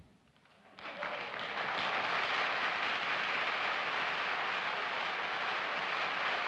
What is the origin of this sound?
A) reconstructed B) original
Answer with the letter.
B